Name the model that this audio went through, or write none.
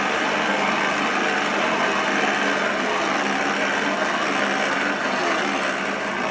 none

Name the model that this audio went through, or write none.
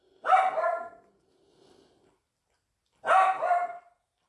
none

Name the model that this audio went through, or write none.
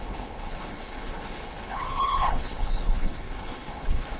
codec, HILCodec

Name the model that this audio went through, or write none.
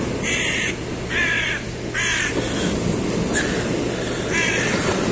none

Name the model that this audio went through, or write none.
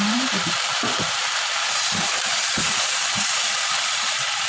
vocoder, BigVGAN v2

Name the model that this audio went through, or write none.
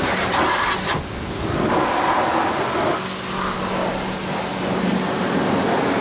none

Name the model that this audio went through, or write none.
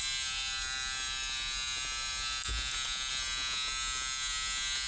none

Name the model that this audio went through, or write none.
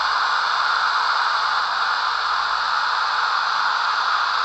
vocoder, BigVGAN v2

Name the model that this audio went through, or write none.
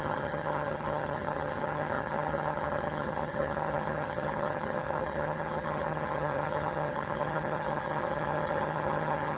vocoder, HiFi-GAN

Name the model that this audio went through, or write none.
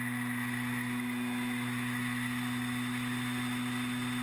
none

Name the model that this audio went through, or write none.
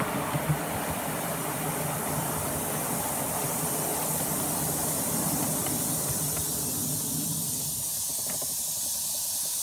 none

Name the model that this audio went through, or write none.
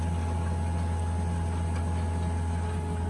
none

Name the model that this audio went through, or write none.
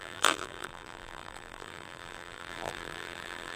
vocoder, BigVGAN v2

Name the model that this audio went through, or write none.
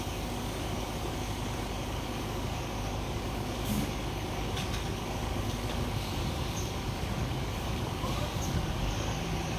codec, DAC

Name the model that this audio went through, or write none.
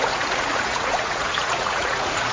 vocoder, Vocos